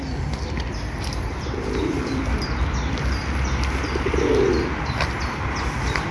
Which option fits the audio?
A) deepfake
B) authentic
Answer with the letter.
B